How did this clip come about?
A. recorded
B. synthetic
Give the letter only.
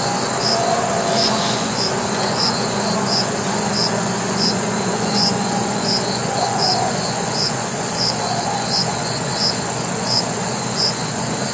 B